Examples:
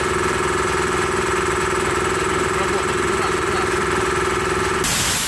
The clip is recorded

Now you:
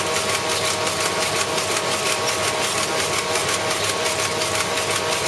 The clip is recorded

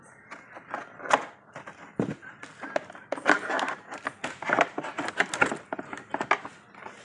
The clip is recorded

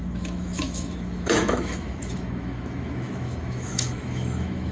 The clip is remade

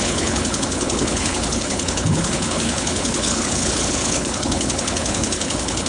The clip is remade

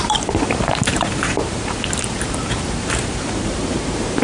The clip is remade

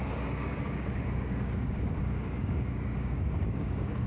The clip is remade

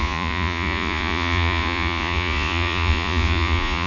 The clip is remade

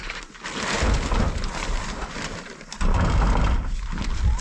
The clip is recorded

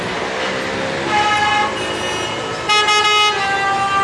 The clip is recorded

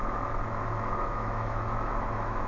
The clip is remade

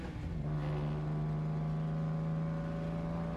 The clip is recorded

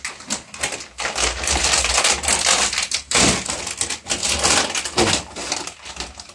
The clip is recorded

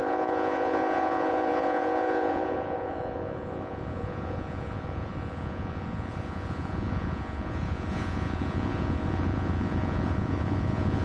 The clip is remade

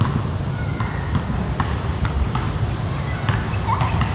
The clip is recorded